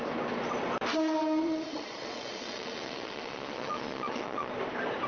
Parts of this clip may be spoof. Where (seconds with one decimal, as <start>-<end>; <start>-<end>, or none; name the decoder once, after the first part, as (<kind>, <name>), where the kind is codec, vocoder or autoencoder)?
1.4-4.5 (vocoder, Vocos)

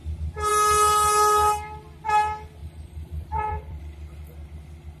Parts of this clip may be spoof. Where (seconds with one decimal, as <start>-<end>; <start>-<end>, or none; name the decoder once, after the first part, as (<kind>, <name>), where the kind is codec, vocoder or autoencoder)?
2.6-3.8 (vocoder, BigVGAN v2)

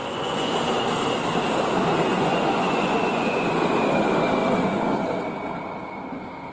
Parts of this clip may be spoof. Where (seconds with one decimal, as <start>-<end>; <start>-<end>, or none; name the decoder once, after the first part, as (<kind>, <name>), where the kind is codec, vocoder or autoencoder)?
0.0-0.5 (vocoder, Vocos); 2.1-3.6; 4.4-5.1

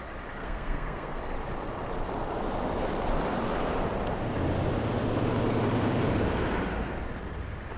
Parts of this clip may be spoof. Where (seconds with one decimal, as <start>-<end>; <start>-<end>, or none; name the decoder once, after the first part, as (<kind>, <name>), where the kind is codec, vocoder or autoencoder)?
0.4-1.2 (codec, SNAC)

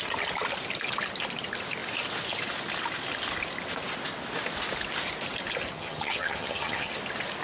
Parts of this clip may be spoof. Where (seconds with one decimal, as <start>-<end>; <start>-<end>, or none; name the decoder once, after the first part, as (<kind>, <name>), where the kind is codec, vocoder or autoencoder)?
5.7-6.9 (vocoder, HiFi-GAN)